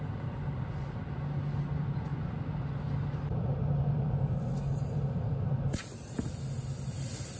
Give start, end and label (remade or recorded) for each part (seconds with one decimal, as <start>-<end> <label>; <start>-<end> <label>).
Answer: 0.0-2.1 recorded; 2.1-5.5 remade; 5.5-7.4 recorded